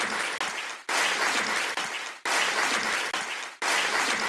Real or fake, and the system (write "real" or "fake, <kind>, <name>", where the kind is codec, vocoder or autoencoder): real